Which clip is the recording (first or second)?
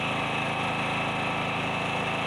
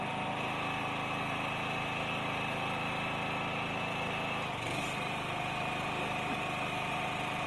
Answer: second